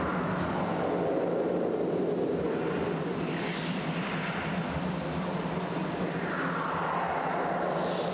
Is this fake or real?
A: real